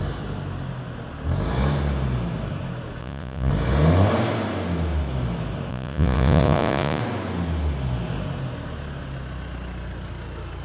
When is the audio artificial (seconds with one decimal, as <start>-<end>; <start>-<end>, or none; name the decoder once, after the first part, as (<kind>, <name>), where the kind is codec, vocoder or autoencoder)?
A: 3.0-3.5 (vocoder, Vocos); 5.7-7.0